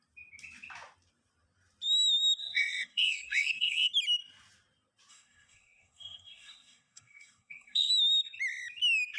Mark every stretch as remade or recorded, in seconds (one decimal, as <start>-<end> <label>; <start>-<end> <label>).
0.0-2.4 recorded; 2.4-3.9 remade; 3.9-5.1 recorded; 5.1-7.9 remade; 7.9-9.2 recorded